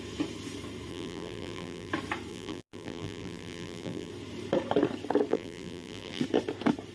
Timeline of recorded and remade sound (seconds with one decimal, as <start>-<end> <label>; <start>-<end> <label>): 0.0-0.9 recorded; 0.9-1.9 remade; 1.9-2.3 recorded; 2.3-4.1 remade; 4.1-5.3 recorded; 5.3-6.2 remade; 6.2-6.9 recorded